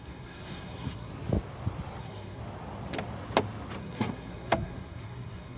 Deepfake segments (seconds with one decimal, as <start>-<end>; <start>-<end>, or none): 0.0-1.1; 2.0-2.4; 3.8-5.6